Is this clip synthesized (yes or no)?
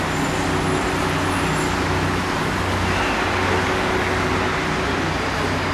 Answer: no